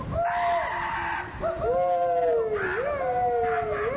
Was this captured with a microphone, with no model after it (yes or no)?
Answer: yes